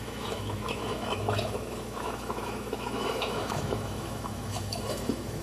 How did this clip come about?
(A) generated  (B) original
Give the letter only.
A